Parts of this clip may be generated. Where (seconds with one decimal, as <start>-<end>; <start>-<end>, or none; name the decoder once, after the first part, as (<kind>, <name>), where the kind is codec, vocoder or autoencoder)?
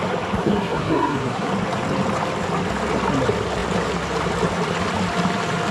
0.4-1.5 (codec, SNAC)